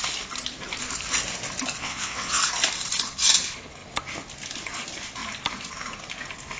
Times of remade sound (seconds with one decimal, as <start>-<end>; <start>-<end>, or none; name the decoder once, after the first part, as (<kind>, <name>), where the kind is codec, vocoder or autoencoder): 1.8-2.4 (vocoder, WaveNeXt)